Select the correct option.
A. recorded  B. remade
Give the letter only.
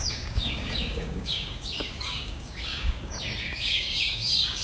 B